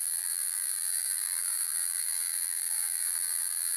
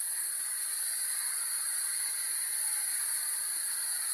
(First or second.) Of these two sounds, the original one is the second